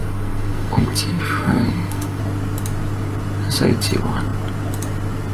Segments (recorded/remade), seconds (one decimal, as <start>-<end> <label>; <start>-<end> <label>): 0.0-2.2 remade; 2.2-5.3 recorded